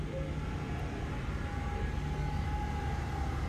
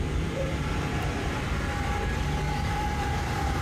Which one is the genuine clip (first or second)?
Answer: first